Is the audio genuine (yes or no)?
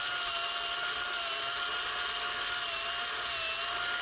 yes